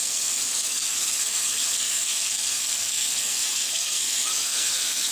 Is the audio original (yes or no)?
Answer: no